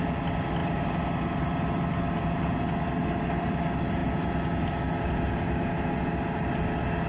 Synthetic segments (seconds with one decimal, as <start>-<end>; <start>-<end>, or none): none